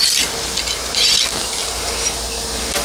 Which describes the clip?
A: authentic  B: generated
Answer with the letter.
A